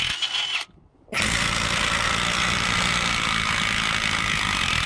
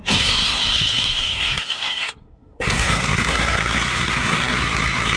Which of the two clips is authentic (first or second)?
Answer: first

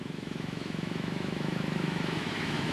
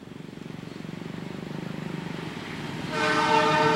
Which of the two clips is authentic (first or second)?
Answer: second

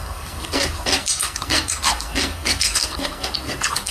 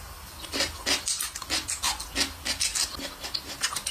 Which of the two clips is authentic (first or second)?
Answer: second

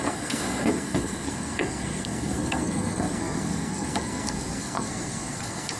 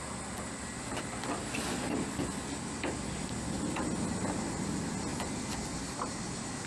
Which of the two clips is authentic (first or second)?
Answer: second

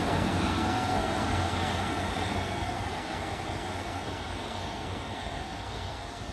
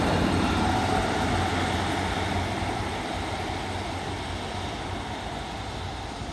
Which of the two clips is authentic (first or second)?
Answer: second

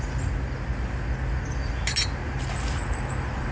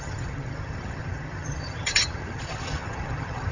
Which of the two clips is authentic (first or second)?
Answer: first